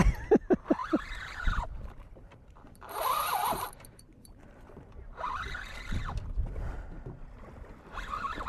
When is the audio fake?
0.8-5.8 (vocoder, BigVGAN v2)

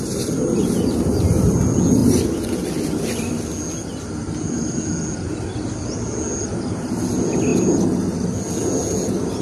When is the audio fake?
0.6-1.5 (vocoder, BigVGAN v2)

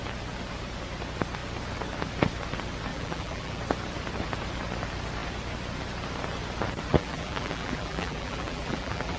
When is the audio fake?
2.9-3.6 (vocoder, BigVGAN v2); 6.9-9.2